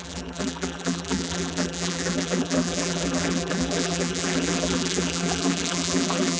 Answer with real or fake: fake